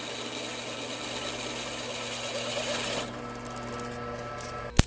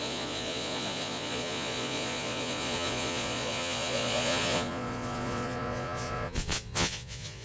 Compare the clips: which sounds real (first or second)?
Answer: first